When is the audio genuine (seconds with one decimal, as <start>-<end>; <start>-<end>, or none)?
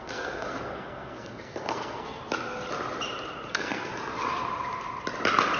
2.2-3.5; 3.9-5.6